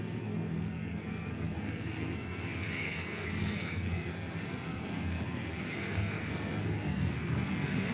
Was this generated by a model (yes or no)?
yes